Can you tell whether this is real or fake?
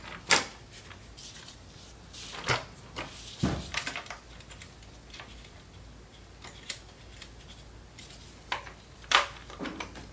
real